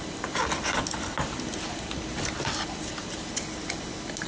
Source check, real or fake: real